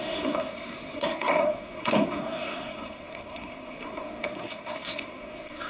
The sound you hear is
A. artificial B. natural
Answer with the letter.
A